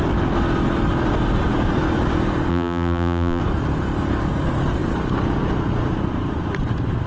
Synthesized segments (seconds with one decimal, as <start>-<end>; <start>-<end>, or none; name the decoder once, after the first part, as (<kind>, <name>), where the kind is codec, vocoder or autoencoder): 2.5-3.4 (vocoder, BigVGAN v2)